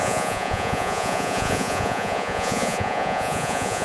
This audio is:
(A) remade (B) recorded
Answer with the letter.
A